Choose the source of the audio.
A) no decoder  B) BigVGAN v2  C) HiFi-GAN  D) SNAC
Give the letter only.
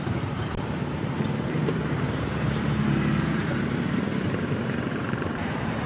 B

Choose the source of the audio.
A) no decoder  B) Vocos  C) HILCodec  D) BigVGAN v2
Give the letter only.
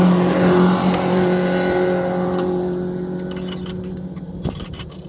A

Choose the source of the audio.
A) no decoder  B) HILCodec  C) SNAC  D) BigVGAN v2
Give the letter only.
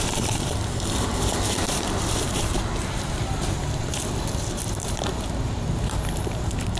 D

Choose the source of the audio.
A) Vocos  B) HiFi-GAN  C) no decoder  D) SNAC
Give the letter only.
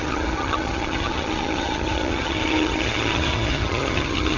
B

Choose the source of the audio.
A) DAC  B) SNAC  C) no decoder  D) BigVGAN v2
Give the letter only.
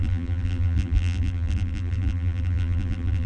D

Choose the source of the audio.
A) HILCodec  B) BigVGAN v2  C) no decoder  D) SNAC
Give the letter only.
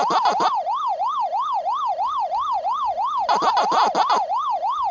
C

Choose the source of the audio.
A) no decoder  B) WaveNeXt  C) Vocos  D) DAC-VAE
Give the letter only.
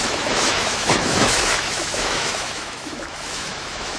D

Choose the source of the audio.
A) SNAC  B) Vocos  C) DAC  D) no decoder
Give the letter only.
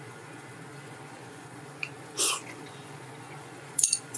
B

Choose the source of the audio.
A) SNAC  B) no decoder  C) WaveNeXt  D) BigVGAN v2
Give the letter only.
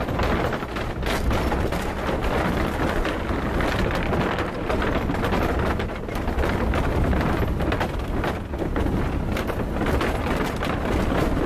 B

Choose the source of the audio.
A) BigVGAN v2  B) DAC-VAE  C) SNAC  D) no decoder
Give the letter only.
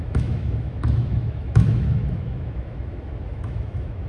B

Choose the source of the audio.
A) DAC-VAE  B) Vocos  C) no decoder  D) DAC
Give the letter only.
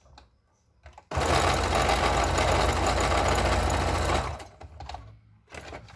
C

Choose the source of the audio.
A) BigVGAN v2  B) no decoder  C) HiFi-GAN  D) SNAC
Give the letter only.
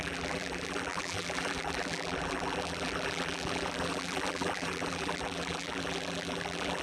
A